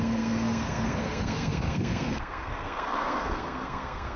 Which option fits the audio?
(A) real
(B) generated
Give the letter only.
B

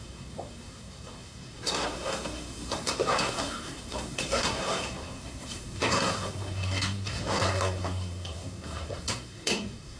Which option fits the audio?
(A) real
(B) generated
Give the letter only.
B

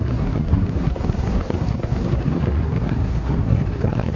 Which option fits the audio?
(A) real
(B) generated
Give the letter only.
B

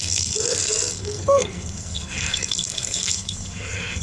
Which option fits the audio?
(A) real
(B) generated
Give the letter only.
B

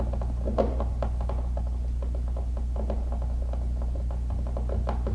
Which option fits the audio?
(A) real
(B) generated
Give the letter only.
A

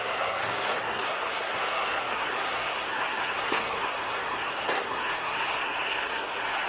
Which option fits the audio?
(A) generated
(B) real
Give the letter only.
A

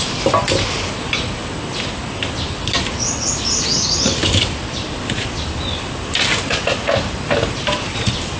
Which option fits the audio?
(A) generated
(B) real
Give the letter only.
B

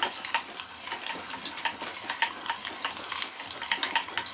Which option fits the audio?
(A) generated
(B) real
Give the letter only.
B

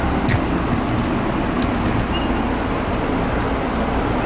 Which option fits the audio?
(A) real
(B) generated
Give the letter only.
A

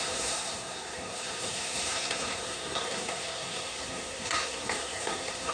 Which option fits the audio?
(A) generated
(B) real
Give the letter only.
A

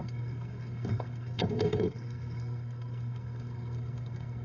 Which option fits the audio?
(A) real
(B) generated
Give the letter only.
B